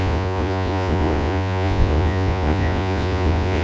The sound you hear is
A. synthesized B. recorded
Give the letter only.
A